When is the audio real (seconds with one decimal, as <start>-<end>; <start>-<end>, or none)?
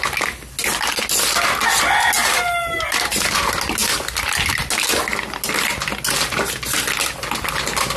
0.0-8.0